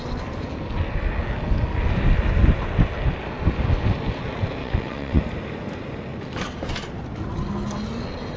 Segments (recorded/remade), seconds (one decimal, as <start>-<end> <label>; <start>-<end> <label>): 0.0-4.6 recorded; 4.6-5.2 remade; 5.2-8.4 recorded